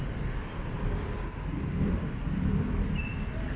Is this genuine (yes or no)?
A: yes